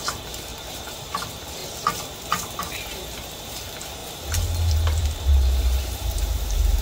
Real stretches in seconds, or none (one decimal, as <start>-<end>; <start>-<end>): 1.6-2.6; 4.0-4.7